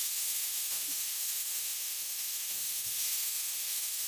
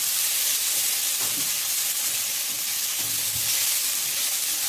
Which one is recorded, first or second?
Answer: second